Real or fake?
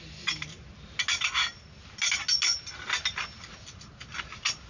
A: real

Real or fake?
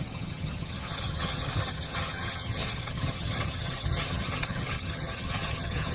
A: fake